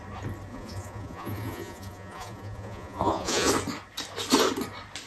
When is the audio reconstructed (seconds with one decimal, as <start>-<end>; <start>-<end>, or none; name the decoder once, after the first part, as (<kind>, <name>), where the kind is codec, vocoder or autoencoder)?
0.5-3.5 (vocoder, Vocos)